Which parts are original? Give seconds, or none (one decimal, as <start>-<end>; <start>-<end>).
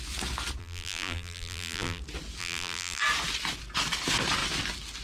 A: 0.0-0.6; 2.0-2.4; 3.0-5.0